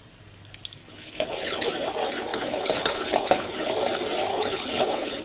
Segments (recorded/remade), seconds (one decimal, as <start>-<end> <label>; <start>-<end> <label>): 0.0-0.8 recorded; 0.8-1.7 remade; 1.7-2.3 recorded; 2.3-3.7 remade; 3.7-4.3 recorded; 4.3-5.2 remade